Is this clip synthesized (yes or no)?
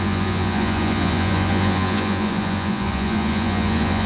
yes